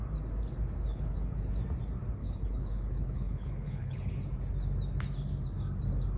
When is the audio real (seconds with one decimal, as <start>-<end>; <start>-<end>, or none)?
0.0-0.8; 1.5-2.2; 4.1-6.2